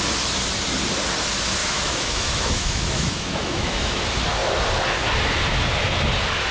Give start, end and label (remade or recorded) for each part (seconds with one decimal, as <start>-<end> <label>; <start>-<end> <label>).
0.0-1.6 recorded; 1.6-4.0 remade; 4.0-6.5 recorded